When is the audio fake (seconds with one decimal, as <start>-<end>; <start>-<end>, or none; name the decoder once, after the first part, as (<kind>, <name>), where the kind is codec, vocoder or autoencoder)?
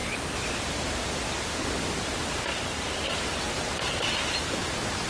none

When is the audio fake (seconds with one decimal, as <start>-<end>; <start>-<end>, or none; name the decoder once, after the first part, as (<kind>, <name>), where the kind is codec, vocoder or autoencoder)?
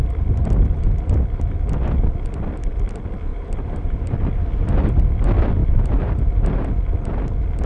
3.3-4.0 (vocoder, BigVGAN v2); 5.6-6.2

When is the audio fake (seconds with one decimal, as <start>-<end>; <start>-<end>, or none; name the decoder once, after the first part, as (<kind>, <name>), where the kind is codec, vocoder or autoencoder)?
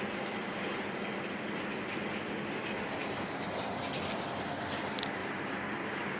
0.4-1.0 (vocoder, BigVGAN v2); 3.0-3.8; 5.2-5.7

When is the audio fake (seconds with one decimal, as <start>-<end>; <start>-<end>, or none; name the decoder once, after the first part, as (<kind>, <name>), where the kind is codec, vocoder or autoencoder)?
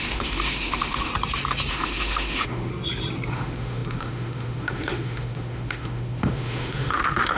0.0-1.1 (autoencoder, DAC-VAE); 1.7-2.7; 3.3-7.4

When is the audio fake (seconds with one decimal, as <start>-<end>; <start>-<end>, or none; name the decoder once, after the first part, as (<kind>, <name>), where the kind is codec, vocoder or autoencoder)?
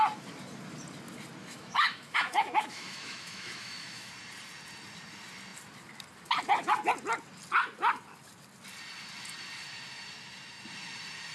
1.4-4.1 (autoencoder, DAC-VAE)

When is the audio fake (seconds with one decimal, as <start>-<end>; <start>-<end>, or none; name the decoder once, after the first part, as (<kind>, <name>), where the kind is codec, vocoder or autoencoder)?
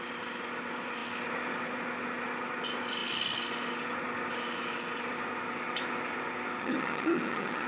6.6-7.7 (vocoder, HiFi-GAN)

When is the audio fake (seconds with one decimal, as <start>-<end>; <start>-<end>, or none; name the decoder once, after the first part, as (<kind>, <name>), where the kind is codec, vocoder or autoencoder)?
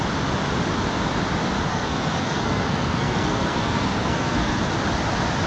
1.7-4.6 (codec, SNAC)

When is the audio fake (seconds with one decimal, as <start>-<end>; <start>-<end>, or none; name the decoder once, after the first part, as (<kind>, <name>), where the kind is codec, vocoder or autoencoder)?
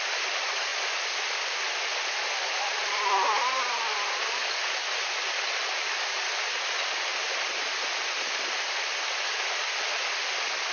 none